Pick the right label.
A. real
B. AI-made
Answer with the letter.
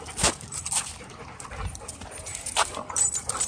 B